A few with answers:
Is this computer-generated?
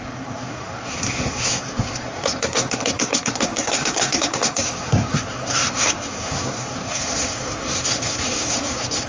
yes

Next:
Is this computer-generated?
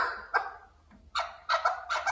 no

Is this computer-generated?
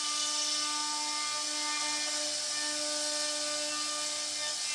no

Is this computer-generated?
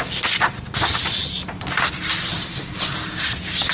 no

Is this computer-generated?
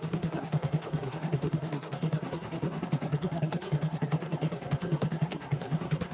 yes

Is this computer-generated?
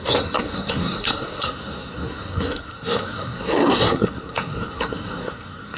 yes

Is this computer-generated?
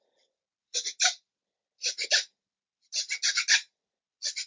no